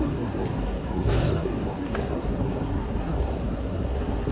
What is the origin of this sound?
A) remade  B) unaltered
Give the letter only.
A